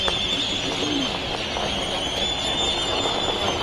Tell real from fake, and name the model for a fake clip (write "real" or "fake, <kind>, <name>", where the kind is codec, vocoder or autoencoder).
real